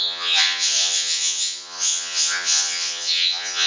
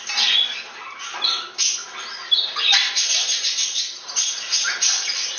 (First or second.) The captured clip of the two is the second